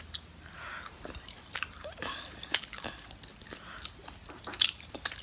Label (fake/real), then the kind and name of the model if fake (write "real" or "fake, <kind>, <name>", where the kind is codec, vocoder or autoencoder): real